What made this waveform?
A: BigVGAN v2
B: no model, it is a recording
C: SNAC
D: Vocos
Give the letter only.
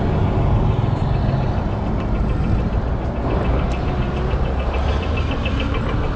B